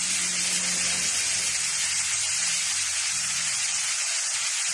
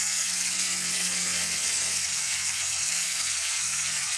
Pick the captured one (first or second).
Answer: first